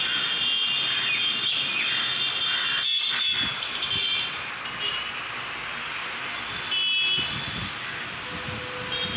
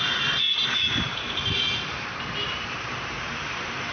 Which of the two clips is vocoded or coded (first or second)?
second